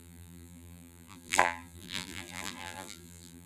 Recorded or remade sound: remade